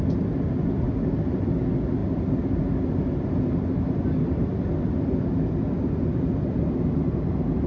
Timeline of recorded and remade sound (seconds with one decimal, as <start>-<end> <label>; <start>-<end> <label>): 0.0-7.7 recorded